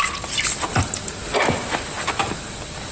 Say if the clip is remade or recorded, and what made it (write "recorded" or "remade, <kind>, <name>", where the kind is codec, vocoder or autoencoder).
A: recorded